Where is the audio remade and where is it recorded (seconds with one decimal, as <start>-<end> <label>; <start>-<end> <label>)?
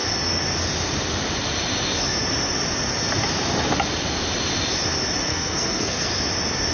0.0-5.3 recorded; 5.3-6.1 remade; 6.1-6.7 recorded